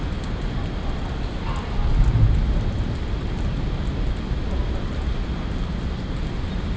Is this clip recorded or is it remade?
recorded